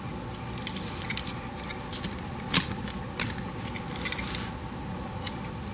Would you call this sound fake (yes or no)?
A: no